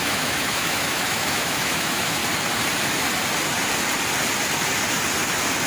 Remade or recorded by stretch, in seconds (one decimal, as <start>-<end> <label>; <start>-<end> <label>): 0.0-2.2 remade; 2.2-5.7 recorded